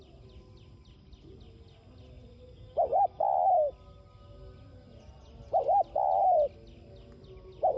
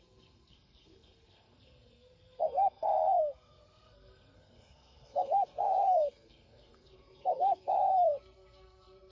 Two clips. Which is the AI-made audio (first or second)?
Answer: second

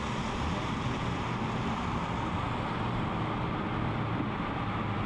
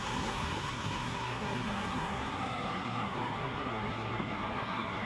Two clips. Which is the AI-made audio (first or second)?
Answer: second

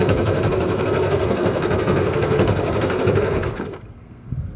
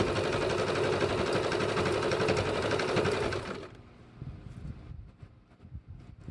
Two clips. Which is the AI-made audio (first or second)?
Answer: first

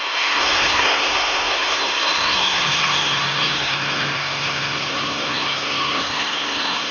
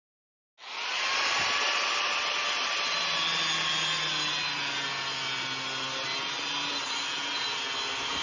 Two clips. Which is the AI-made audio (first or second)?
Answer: first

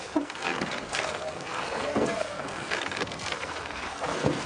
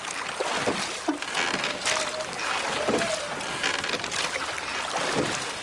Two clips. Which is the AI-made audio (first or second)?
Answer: first